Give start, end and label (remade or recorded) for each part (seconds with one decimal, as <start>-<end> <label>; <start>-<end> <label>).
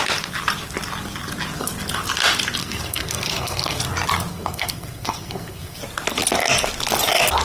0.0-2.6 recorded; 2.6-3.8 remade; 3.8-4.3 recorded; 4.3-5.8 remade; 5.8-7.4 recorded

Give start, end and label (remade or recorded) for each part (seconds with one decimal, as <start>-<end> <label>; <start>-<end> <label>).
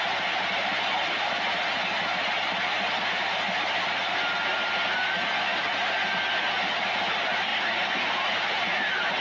0.0-9.2 recorded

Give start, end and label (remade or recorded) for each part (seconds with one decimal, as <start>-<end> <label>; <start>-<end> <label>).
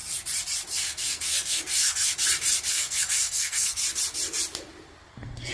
0.0-0.7 recorded; 0.7-2.1 remade; 2.1-2.7 recorded; 2.7-3.8 remade; 3.8-5.1 recorded; 5.1-5.5 remade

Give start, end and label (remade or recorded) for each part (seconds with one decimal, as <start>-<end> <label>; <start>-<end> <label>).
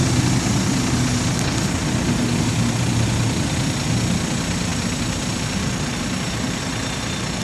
0.0-7.4 recorded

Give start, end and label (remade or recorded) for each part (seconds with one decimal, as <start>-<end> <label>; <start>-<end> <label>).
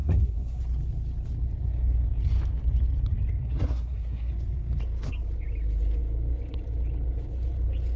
0.0-0.6 remade; 0.6-3.4 recorded; 3.4-4.3 remade; 4.3-8.0 recorded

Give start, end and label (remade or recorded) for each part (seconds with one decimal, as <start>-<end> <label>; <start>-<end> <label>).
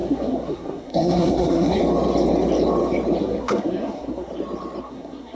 0.0-1.8 remade; 1.8-3.2 recorded; 3.2-4.3 remade; 4.3-4.8 recorded; 4.8-5.3 remade